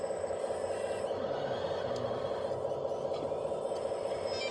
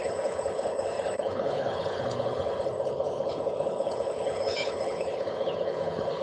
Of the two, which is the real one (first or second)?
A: first